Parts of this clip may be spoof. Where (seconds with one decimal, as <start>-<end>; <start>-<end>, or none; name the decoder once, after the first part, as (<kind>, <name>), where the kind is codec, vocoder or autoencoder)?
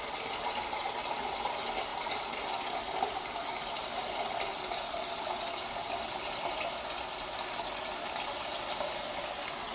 none